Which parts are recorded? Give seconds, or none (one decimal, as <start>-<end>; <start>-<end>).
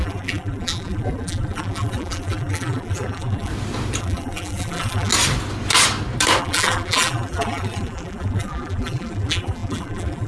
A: 3.5-4.0; 5.1-6.4